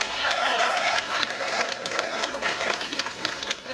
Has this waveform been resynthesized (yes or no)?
yes